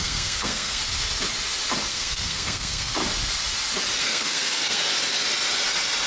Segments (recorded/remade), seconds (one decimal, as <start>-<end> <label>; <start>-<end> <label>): 0.0-0.8 remade; 0.8-1.9 recorded; 1.9-3.0 remade; 3.0-4.0 recorded; 4.0-4.8 remade; 4.8-6.1 recorded